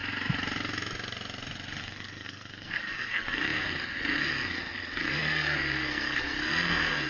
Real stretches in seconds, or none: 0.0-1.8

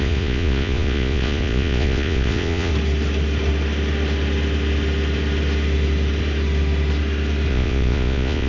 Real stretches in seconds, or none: 2.7-7.5

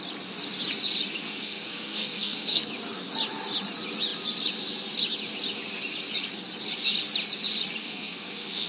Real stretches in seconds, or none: 0.0-1.2; 2.7-7.8